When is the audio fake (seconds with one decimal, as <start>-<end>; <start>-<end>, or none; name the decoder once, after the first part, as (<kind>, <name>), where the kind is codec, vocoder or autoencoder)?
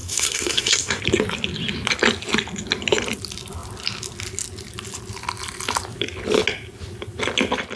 0.0-1.0 (codec, SNAC)